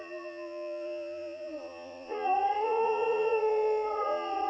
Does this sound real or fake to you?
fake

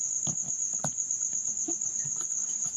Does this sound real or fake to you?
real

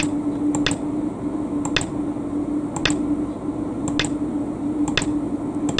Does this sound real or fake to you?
real